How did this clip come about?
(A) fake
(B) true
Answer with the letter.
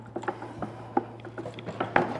B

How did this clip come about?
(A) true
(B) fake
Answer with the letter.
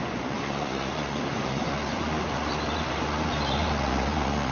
B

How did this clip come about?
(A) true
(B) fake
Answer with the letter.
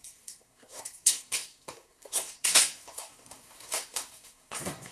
B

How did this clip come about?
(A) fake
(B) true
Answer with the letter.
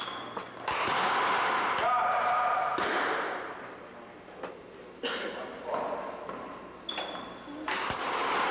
B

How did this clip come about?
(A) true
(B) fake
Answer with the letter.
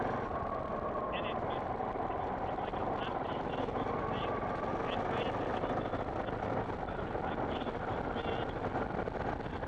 A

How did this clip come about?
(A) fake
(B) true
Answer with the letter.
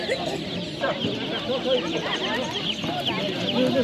B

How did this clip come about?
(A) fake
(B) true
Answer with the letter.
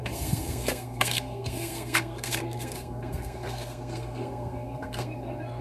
A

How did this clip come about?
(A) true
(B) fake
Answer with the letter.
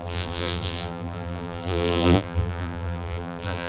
B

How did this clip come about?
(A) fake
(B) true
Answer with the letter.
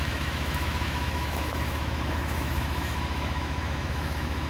A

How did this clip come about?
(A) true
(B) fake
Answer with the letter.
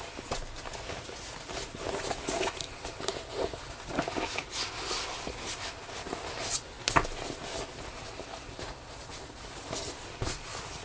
A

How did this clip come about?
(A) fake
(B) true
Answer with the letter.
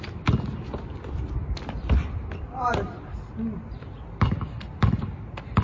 B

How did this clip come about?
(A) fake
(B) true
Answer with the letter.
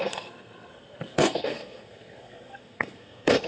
A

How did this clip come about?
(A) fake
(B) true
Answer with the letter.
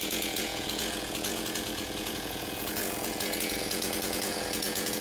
A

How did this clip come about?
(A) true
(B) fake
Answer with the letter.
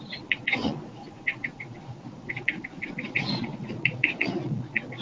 B